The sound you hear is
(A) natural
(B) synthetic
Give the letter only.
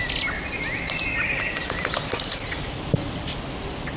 A